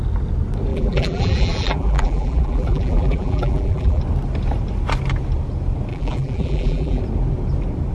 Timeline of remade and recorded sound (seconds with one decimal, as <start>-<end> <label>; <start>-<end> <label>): 0.0-0.7 recorded; 0.7-4.0 remade; 4.0-5.9 recorded; 5.9-7.0 remade; 7.0-7.9 recorded